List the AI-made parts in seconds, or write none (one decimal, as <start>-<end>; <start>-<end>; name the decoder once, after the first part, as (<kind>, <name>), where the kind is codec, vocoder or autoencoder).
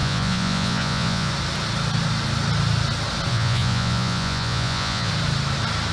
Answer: 0.0-1.3 (vocoder, Vocos); 3.3-5.1